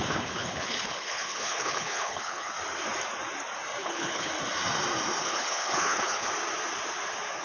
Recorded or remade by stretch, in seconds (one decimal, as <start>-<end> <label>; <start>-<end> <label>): 0.0-2.5 remade; 2.5-3.8 recorded; 3.8-4.3 remade; 4.3-5.2 recorded; 5.2-6.3 remade; 6.3-7.4 recorded